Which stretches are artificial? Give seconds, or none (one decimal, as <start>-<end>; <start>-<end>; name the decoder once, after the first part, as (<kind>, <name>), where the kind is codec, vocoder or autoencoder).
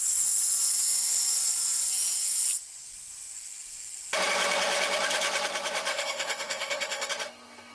5.9-7.1 (codec, SNAC)